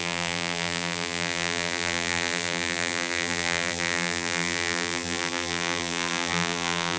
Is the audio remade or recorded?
remade